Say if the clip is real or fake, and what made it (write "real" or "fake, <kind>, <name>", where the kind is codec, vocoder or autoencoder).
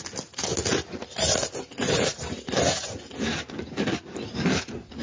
real